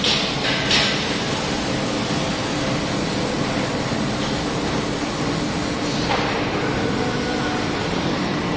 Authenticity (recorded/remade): recorded